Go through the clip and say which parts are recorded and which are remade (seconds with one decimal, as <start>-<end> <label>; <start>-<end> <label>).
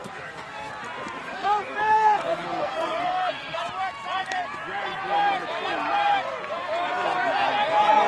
0.0-0.7 remade; 0.7-1.2 recorded; 1.2-3.6 remade; 3.6-8.1 recorded